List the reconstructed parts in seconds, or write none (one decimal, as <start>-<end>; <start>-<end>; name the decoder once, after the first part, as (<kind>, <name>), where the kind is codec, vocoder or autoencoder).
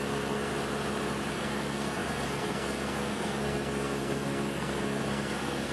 0.0-0.5 (codec, SNAC); 1.3-5.7